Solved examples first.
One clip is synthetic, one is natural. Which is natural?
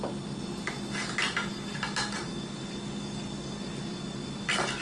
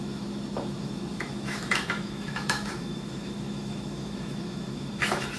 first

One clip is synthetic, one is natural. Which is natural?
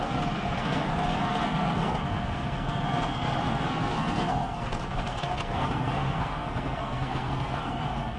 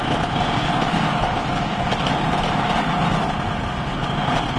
second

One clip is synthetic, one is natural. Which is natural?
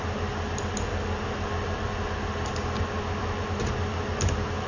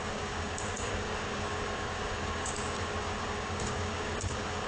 first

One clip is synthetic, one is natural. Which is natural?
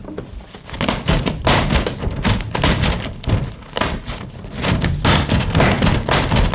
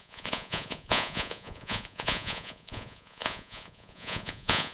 first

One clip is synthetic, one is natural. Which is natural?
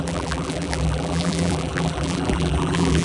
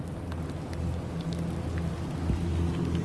second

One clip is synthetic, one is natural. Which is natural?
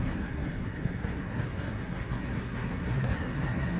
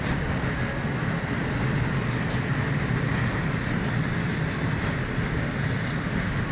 second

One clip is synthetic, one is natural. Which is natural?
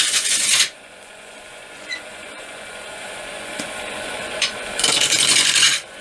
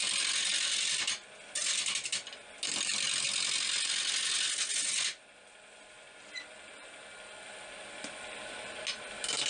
second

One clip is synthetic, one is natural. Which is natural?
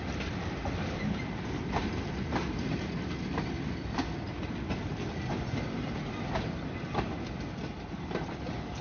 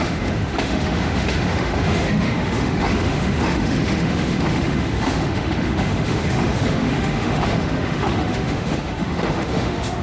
first